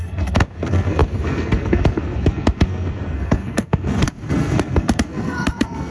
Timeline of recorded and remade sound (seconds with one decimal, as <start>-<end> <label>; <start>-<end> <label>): 0.0-5.9 remade